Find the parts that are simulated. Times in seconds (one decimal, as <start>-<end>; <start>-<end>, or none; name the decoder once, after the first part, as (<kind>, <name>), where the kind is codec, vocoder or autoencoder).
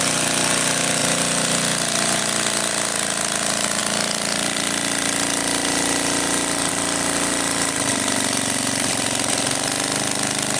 1.0-2.2 (vocoder, BigVGAN v2)